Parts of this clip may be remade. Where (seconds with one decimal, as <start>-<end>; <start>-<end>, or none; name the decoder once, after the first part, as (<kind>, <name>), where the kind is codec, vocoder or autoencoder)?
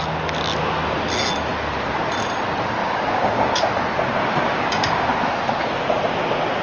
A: 2.8-3.7 (codec, DAC); 4.2-5.1